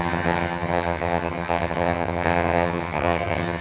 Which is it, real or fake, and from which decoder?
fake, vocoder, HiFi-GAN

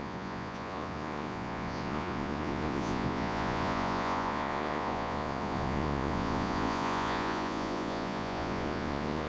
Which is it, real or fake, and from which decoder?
fake, vocoder, Vocos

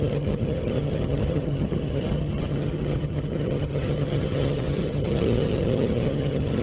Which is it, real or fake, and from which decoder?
fake, vocoder, HiFi-GAN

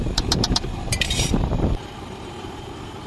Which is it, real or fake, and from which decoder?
fake, vocoder, BigVGAN v2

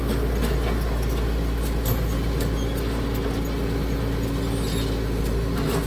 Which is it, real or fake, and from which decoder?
real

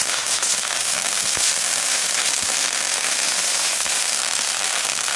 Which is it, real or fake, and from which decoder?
fake, autoencoder, DAC-VAE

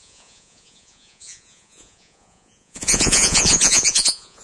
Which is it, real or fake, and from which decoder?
fake, vocoder, Vocos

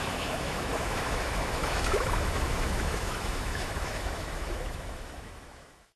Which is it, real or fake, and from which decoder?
fake, autoencoder, DAC-VAE